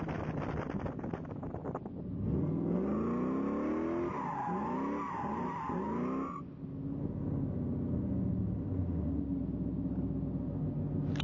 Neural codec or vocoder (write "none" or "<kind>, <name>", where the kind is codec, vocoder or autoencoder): none